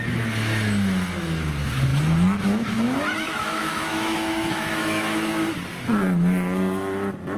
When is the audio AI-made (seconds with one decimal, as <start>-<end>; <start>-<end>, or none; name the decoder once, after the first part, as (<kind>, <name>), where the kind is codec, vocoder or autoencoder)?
1.9-5.5 (autoencoder, DAC-VAE)